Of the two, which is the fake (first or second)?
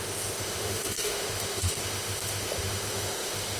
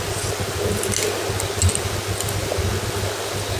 first